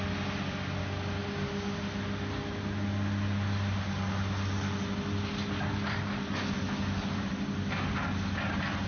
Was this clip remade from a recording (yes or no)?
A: no